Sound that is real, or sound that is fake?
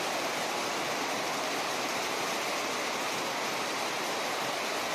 real